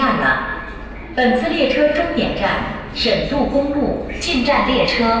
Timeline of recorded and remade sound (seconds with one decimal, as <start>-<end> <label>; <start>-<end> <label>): 0.0-5.2 recorded